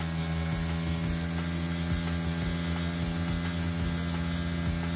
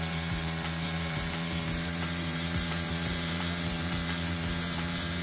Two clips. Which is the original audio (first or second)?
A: first